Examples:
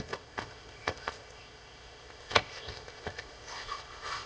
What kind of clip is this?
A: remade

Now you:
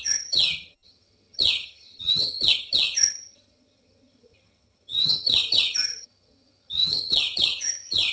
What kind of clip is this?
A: remade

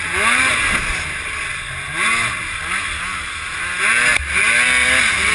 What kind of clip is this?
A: recorded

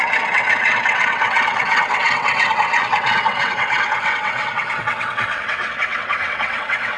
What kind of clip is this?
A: remade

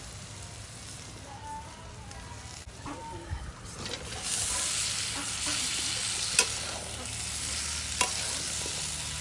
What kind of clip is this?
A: recorded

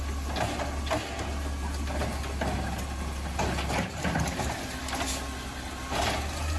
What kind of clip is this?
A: recorded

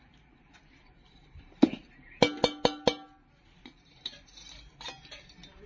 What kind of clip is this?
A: recorded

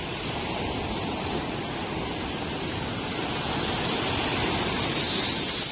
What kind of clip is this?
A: recorded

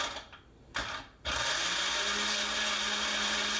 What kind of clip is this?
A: recorded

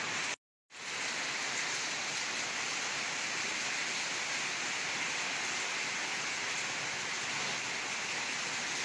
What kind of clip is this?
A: recorded